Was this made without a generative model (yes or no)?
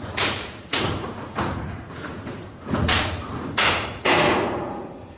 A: no